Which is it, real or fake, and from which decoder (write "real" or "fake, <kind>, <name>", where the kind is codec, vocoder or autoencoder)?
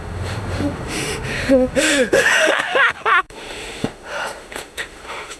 fake, autoencoder, DAC-VAE